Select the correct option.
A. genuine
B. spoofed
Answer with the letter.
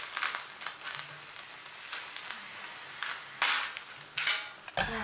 A